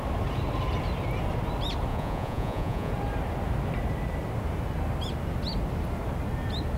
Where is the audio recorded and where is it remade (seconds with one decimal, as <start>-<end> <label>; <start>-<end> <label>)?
0.0-1.9 recorded; 1.9-2.9 remade; 2.9-6.8 recorded